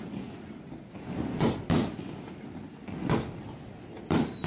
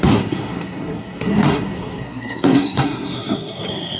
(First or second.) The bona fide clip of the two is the first